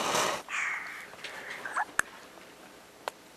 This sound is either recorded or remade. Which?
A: recorded